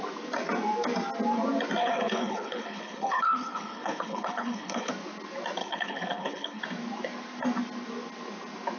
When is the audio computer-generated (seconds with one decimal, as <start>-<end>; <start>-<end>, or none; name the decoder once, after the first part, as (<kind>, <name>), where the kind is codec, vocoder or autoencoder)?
1.8-4.9 (codec, HILCodec); 5.6-6.6